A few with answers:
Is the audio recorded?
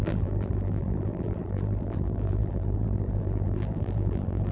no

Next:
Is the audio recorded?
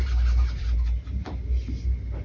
yes